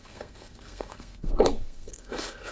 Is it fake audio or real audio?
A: fake